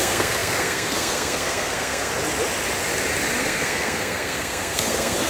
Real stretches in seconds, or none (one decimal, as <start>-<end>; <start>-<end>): 2.1-3.4